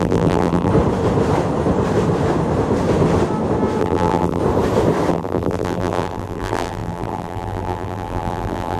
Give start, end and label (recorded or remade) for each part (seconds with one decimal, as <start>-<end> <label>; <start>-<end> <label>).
0.0-0.7 remade; 0.7-3.8 recorded; 3.8-4.4 remade; 4.4-5.1 recorded; 5.1-8.8 remade